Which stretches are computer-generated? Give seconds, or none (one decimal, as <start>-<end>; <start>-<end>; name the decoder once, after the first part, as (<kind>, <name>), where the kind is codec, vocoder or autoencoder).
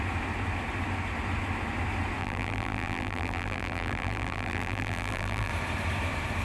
2.2-5.5 (vocoder, BigVGAN v2)